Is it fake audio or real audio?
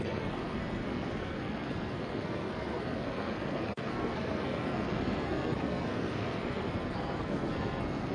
fake